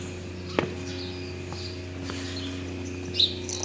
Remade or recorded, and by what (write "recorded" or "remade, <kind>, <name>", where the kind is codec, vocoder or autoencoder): recorded